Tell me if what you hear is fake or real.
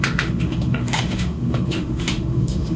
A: fake